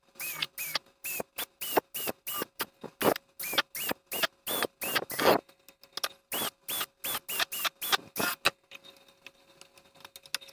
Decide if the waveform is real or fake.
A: real